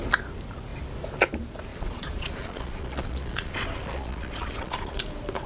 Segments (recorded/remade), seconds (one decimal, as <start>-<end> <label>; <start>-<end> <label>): 0.0-1.7 recorded; 1.7-5.0 remade; 5.0-5.5 recorded